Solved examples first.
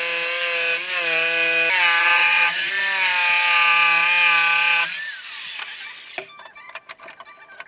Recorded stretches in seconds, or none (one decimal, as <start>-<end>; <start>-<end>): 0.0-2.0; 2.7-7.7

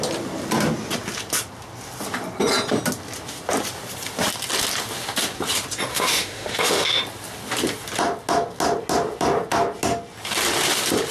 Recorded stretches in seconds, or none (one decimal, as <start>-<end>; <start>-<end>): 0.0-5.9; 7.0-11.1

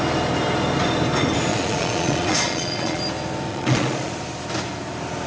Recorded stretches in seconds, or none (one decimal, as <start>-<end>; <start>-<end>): 0.0-1.5; 3.0-3.5; 4.1-5.3

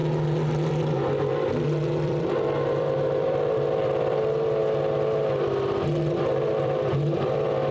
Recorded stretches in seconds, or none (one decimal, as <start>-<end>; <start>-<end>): 0.0-0.7; 4.6-6.0

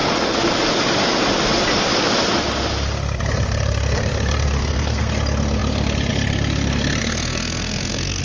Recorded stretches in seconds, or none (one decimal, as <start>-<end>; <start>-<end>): 0.0-4.6; 5.1-7.0

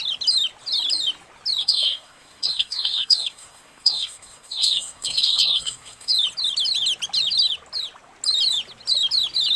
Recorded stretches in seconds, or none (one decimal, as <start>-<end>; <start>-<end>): 0.0-1.6; 6.1-9.6

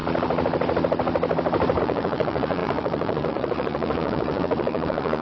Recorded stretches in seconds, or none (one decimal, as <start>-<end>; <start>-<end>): 0.0-1.8

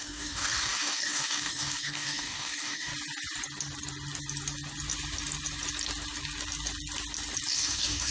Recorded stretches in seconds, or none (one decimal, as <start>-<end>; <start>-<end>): 2.9-7.5